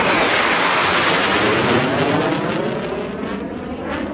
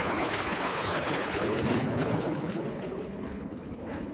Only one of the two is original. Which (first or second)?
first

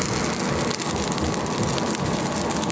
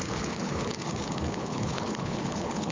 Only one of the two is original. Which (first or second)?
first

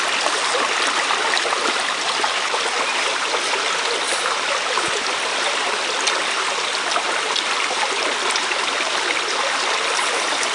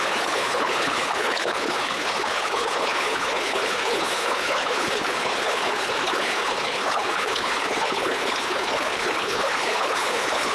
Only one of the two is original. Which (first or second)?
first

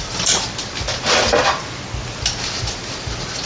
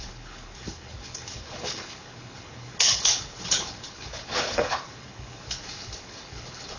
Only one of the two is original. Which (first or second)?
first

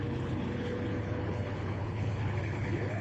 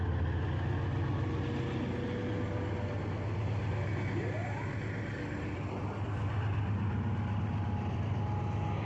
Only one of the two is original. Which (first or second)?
second